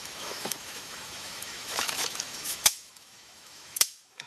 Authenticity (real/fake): fake